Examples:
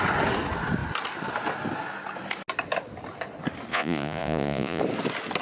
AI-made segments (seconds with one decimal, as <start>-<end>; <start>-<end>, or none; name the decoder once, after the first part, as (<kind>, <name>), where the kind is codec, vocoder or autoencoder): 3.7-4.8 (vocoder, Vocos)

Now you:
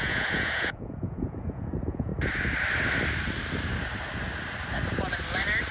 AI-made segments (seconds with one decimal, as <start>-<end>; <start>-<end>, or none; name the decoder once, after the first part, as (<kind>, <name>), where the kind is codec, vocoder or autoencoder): 0.0-2.1 (vocoder, Vocos)

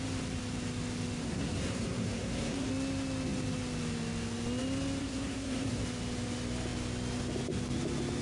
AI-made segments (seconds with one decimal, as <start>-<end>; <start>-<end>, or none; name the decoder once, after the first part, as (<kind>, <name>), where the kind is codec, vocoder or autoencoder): 1.2-2.7 (codec, SNAC); 5.0-5.8